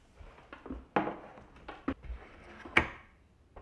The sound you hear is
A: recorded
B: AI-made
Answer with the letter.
A